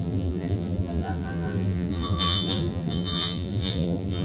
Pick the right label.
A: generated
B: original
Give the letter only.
A